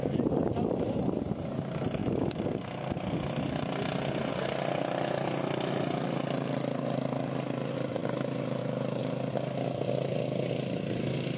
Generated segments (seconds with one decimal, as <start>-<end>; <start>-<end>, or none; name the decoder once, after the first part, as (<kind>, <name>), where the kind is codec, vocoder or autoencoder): none